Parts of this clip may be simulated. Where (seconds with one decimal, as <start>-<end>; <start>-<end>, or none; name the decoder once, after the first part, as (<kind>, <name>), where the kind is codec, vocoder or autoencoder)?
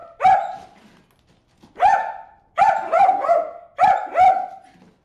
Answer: none